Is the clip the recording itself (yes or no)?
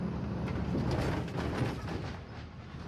yes